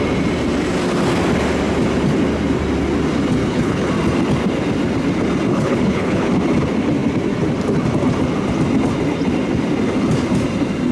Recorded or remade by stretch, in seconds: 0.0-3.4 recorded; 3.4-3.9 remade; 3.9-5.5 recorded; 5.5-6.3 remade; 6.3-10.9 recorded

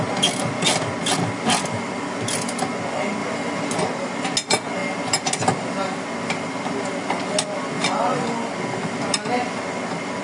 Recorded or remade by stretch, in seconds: 0.0-10.2 recorded